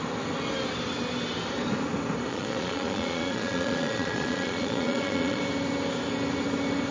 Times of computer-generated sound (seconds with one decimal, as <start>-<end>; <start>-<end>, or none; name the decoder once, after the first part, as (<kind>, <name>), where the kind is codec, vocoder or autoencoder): 2.3-5.4 (vocoder, Vocos)